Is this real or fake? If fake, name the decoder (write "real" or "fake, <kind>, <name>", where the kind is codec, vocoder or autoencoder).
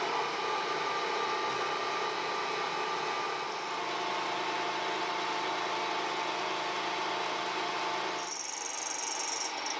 real